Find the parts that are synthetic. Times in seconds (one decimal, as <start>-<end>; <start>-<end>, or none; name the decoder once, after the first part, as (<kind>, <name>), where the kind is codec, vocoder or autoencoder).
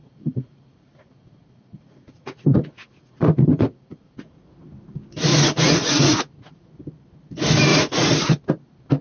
0.0-4.6 (vocoder, Vocos); 5.3-6.7; 7.7-8.4